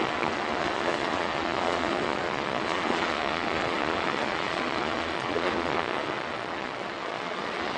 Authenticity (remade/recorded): remade